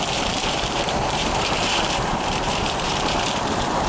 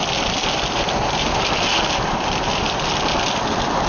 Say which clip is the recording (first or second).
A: second